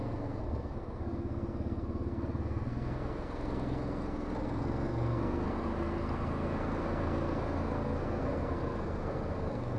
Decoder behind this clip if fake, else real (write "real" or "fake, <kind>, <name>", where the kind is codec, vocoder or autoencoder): fake, codec, SNAC